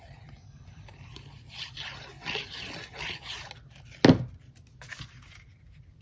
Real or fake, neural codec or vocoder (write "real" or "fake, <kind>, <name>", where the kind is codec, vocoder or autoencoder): real